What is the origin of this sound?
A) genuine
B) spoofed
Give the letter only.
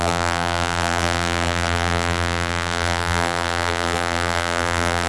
B